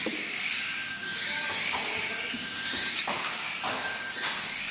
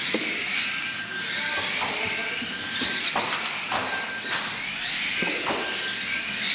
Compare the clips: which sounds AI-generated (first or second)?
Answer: first